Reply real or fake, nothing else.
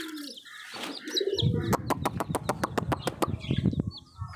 real